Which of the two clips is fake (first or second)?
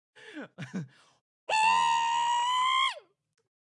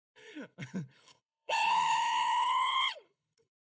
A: second